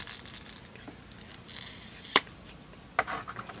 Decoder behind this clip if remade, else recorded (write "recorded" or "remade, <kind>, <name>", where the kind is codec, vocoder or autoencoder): recorded